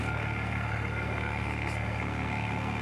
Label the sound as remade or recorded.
remade